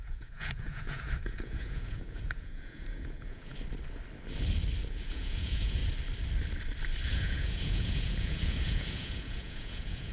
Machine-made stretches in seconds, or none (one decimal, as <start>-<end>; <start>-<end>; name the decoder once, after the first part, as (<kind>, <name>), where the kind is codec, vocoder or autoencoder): 0.0-3.5 (vocoder, Vocos); 4.8-5.8; 7.1-10.1